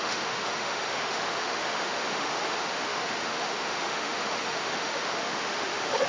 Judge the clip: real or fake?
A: fake